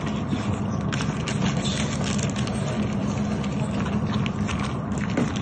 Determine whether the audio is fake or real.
real